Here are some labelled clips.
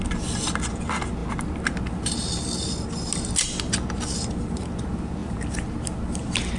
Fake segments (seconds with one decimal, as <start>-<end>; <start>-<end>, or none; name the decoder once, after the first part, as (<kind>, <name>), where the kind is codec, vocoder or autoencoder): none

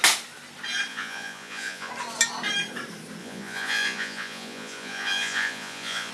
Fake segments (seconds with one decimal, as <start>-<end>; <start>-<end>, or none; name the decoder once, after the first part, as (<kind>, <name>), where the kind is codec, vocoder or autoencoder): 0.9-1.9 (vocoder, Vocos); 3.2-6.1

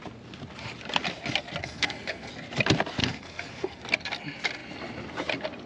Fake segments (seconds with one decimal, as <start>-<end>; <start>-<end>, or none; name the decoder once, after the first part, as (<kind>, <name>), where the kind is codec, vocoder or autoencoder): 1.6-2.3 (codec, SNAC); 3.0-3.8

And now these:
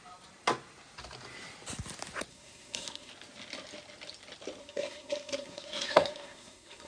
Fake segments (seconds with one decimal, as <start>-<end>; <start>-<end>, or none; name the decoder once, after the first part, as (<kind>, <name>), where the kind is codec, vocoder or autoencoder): 2.3-3.1 (codec, SNAC); 4.6-6.9

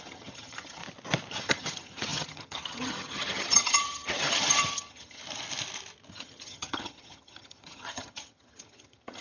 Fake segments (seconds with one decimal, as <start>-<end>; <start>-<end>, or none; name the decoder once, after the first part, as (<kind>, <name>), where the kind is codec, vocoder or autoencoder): 0.0-0.8 (vocoder, HiFi-GAN); 1.3-5.2; 6.1-9.2

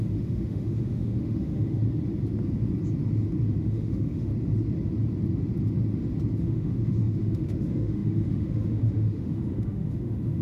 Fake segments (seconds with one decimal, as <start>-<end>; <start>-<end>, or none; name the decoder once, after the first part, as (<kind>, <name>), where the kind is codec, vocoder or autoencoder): 0.0-1.8 (autoencoder, DAC-VAE); 3.6-4.3; 6.4-10.4

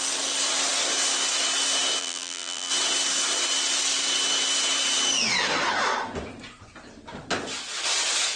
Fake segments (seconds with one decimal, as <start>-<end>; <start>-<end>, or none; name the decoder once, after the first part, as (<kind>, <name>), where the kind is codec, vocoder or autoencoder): 2.0-2.7 (vocoder, BigVGAN v2)